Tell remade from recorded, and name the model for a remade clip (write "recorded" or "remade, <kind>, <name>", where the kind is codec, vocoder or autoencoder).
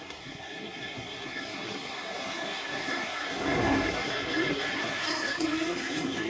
remade, codec, SNAC